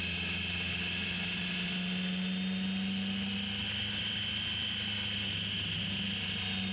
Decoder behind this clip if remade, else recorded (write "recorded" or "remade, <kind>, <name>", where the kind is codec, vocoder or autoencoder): recorded